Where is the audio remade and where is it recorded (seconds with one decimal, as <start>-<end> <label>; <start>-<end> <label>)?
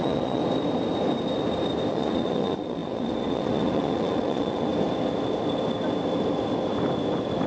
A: 0.0-0.4 remade; 0.4-1.9 recorded; 1.9-4.7 remade; 4.7-7.5 recorded